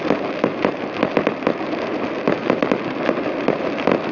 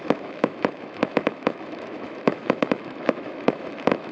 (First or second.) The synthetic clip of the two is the second